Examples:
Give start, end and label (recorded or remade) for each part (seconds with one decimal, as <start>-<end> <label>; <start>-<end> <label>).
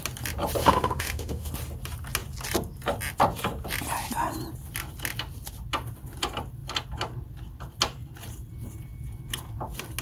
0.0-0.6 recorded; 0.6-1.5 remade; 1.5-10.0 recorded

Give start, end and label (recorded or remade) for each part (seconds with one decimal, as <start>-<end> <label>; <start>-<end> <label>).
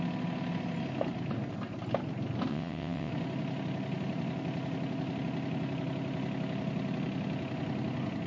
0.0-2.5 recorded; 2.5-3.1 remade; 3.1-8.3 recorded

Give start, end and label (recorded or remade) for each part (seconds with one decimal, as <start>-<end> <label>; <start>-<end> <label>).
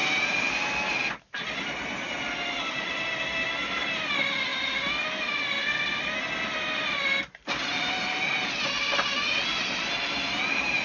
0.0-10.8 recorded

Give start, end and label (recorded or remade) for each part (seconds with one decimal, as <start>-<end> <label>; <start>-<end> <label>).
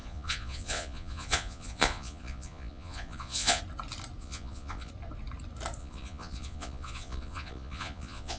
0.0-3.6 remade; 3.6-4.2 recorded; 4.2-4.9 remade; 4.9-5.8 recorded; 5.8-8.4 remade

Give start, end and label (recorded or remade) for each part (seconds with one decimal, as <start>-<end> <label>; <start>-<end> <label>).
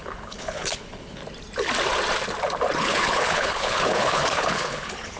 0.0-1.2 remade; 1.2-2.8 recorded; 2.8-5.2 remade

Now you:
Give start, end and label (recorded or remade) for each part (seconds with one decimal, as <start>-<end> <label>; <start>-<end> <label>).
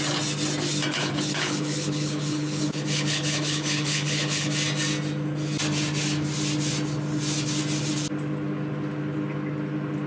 0.0-0.9 recorded; 0.9-4.5 remade; 4.5-10.1 recorded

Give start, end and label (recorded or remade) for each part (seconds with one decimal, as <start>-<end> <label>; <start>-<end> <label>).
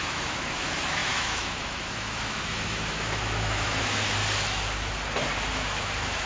0.0-4.2 remade; 4.2-5.5 recorded; 5.5-6.3 remade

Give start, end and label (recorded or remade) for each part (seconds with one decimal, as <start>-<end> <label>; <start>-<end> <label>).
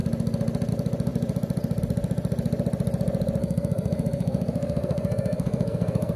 0.0-3.4 recorded; 3.4-6.2 remade